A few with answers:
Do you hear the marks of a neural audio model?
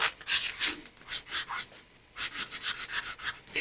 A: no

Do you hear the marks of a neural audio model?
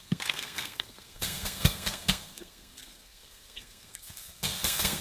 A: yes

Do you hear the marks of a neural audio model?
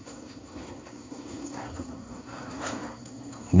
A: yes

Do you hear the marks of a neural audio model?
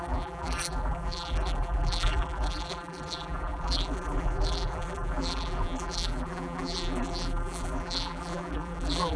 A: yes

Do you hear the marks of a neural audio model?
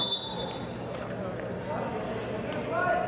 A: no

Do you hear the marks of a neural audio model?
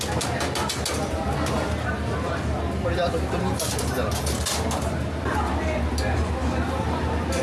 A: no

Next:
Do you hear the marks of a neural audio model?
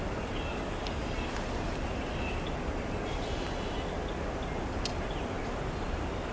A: no